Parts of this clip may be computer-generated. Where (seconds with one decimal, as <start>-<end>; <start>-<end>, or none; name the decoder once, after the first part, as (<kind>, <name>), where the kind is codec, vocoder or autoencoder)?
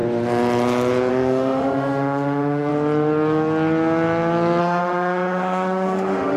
1.1-2.7 (autoencoder, DAC-VAE); 4.6-6.4